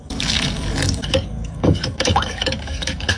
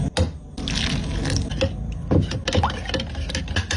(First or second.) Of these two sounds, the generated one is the first